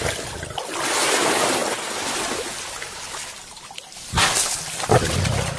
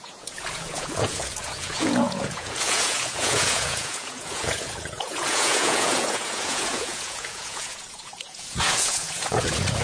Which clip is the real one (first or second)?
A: first